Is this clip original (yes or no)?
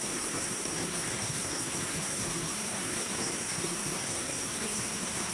no